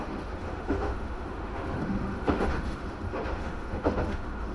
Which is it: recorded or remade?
remade